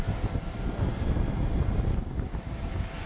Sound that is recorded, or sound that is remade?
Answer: recorded